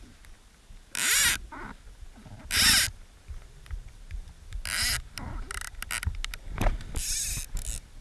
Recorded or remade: recorded